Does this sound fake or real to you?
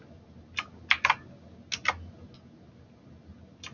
real